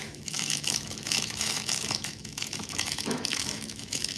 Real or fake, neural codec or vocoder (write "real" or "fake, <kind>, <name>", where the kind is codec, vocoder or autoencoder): fake, autoencoder, DAC-VAE